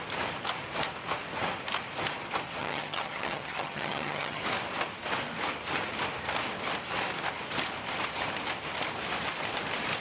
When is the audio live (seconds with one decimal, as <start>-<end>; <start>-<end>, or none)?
0.0-2.6; 4.4-10.0